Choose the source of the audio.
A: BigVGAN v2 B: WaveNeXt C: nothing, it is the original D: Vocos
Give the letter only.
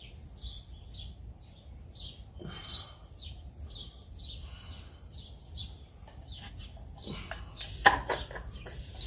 C